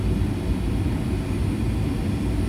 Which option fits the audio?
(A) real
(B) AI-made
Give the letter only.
A